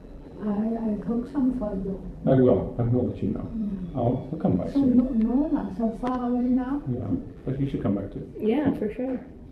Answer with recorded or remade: remade